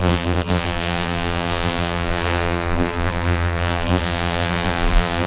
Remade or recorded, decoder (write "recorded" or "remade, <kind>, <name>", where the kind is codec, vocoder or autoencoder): remade, vocoder, BigVGAN v2